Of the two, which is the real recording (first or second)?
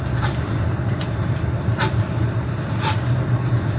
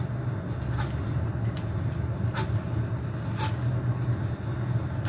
second